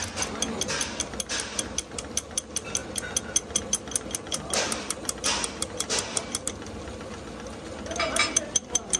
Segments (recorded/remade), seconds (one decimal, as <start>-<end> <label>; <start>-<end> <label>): 0.0-9.0 recorded